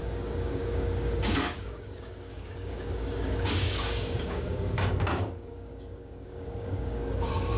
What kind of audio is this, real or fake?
fake